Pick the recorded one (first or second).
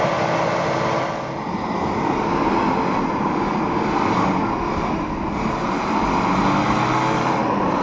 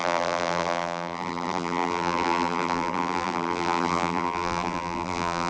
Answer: first